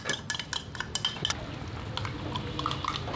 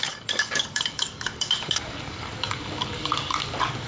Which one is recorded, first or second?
first